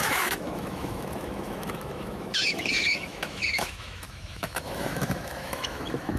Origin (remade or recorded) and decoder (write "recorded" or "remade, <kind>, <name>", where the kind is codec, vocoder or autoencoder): remade, autoencoder, DAC-VAE